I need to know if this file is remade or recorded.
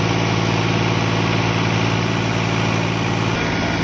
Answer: recorded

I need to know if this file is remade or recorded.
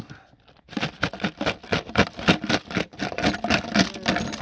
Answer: recorded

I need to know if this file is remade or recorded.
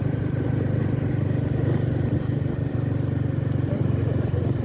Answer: recorded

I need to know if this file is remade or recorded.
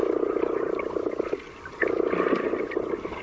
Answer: recorded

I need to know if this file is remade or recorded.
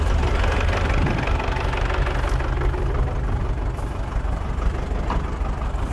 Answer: recorded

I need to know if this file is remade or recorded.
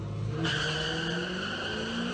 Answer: recorded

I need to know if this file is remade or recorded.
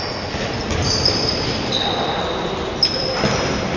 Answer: recorded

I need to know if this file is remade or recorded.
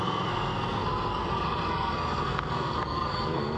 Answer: remade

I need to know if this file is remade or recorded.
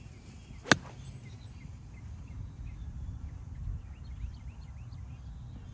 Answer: recorded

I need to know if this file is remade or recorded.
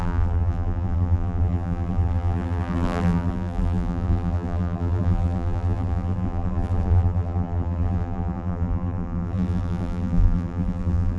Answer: remade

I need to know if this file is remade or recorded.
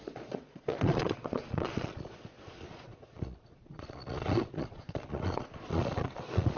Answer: remade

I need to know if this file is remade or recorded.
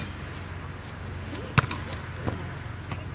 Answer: recorded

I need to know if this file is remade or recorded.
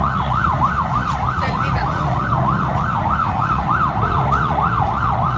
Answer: remade